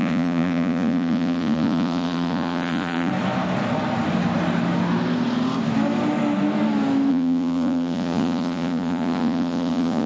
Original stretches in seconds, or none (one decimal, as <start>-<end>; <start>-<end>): 3.1-7.1